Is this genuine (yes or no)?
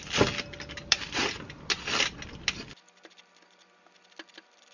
yes